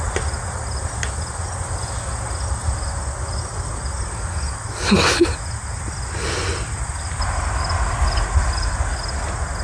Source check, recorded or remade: recorded